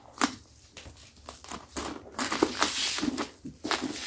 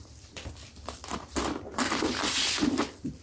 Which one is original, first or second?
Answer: first